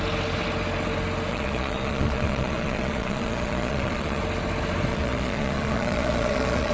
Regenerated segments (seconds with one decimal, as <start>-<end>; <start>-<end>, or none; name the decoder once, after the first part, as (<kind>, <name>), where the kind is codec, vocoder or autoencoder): 1.3-4.2 (vocoder, Vocos); 4.9-6.7